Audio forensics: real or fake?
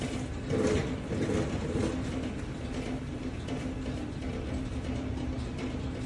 real